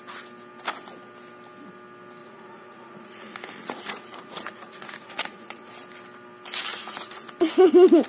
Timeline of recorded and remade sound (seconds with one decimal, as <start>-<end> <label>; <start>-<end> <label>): 0.0-2.2 recorded; 2.2-5.7 remade; 5.7-6.7 recorded; 6.7-7.3 remade; 7.3-8.1 recorded